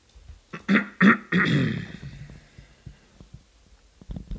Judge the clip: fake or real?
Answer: real